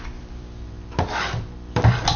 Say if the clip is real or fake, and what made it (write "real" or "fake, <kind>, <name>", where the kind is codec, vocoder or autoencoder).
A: real